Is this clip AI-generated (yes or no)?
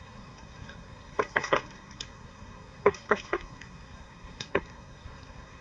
yes